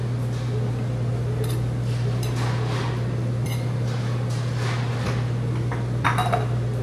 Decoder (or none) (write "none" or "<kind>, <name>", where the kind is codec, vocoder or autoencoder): none